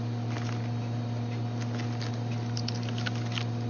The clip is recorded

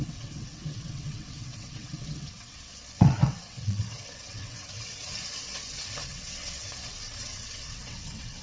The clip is remade